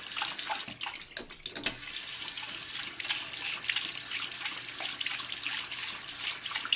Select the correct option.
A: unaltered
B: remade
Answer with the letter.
A